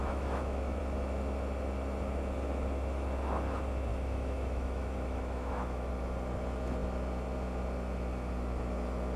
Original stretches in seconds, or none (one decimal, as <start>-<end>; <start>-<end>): 0.8-3.9; 5.9-9.2